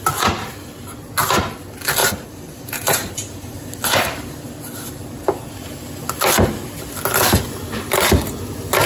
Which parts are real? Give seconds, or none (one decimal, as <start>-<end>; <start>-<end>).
0.0-2.0; 5.8-8.9